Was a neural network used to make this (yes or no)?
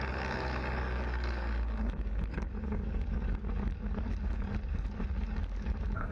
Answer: yes